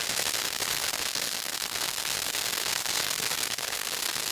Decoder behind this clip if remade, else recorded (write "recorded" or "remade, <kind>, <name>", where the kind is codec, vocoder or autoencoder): remade, codec, SNAC